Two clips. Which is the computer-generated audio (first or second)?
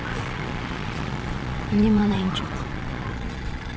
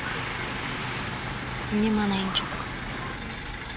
first